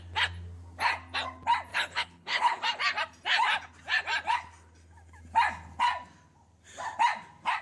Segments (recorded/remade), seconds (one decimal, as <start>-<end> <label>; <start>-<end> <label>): 0.0-1.7 recorded; 1.7-2.6 remade; 2.6-7.6 recorded